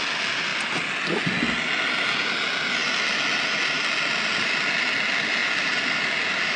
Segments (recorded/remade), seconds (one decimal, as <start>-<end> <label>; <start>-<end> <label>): 0.0-6.6 recorded